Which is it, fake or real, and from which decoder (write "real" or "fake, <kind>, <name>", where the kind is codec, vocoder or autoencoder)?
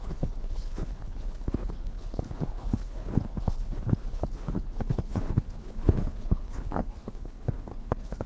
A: fake, codec, HILCodec